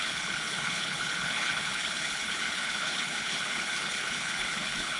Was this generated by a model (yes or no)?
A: yes